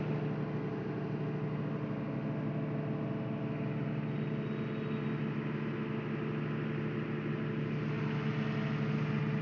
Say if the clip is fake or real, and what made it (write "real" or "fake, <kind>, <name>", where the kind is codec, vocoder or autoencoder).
real